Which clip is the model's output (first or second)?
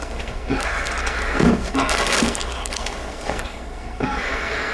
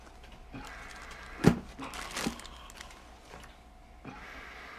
first